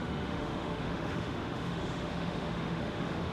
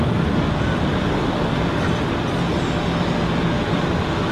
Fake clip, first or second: first